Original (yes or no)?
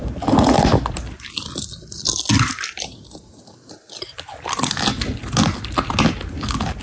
yes